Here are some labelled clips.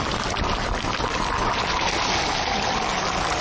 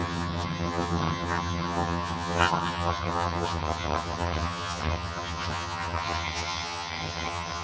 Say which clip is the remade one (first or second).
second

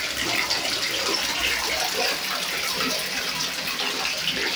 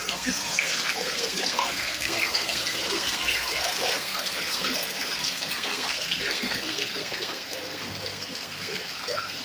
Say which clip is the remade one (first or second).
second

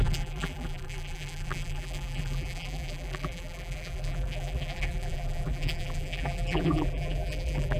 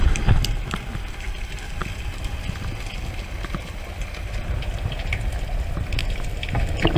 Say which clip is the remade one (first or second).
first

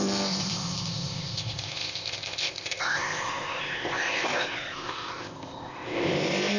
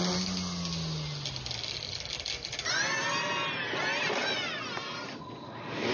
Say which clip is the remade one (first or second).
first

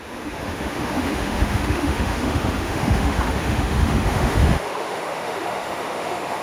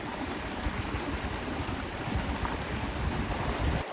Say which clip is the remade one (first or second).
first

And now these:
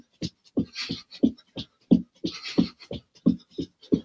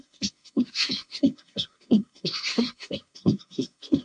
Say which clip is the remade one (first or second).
second